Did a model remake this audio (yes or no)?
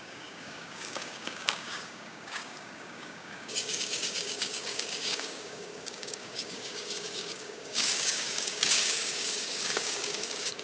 yes